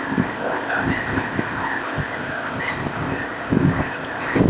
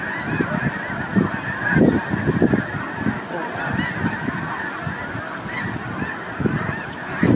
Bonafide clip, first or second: second